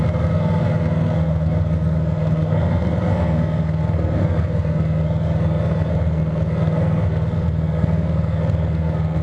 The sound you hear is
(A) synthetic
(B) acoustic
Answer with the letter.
A